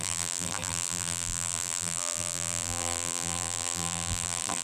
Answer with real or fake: fake